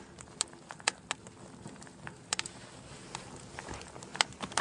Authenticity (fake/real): real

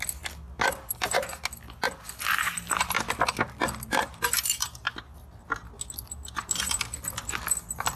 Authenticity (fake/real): real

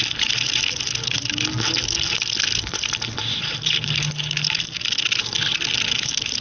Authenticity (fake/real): real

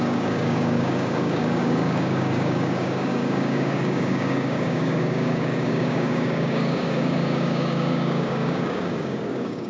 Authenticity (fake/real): fake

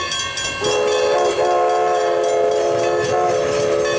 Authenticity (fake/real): real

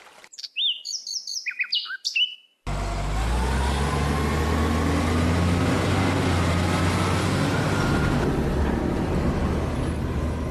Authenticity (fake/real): real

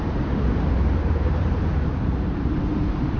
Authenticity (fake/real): fake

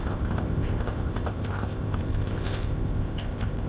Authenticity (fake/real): fake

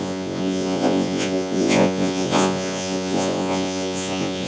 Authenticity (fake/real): fake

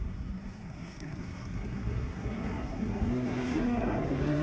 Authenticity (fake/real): fake